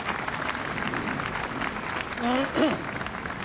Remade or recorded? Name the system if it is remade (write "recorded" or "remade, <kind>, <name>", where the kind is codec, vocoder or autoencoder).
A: recorded